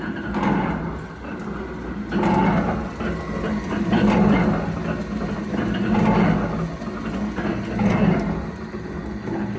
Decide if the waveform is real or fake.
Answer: real